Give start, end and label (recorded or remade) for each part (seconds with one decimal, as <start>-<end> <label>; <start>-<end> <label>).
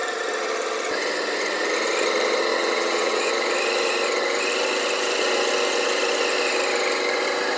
0.0-2.5 recorded; 2.5-3.3 remade; 3.3-7.6 recorded